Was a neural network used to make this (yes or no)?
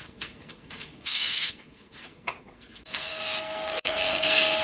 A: yes